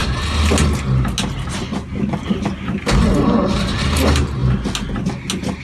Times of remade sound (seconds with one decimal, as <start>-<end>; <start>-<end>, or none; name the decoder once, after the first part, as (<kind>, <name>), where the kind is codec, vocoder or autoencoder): none